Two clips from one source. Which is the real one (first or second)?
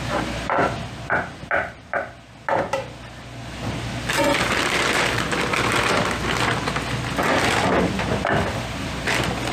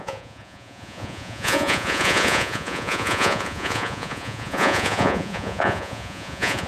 first